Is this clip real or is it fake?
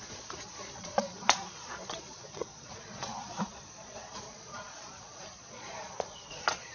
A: fake